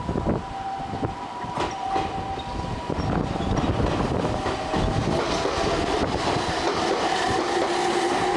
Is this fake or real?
real